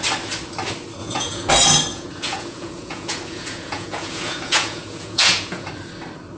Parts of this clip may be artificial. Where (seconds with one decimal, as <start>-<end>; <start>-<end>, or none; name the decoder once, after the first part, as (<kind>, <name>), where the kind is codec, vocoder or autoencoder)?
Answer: 1.0-1.5 (vocoder, Vocos); 1.9-5.7